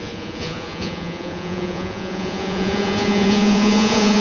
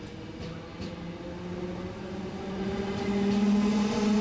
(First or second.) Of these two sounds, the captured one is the second